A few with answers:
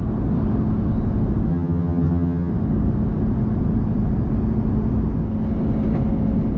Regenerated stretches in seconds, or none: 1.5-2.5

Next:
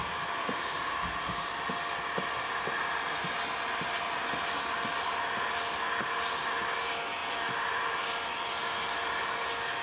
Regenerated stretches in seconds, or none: none

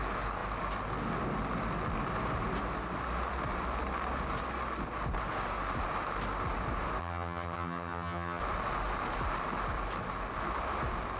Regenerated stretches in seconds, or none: 7.0-8.4

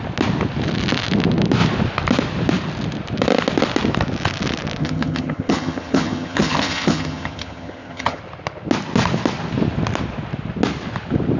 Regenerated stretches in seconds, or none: 4.8-8.2